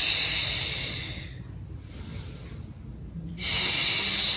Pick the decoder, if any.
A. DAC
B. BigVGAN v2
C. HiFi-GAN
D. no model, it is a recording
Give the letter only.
D